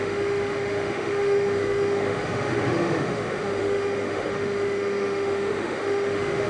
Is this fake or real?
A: fake